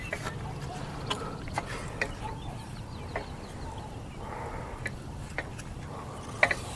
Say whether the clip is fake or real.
real